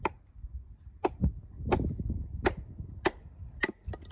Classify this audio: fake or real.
real